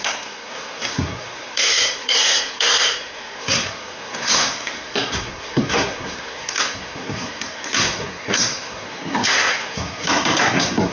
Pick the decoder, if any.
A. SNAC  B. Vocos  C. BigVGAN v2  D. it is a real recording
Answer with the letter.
A